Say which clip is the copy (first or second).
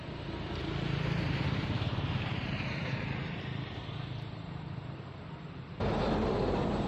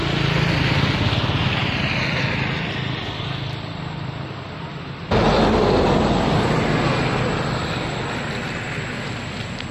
first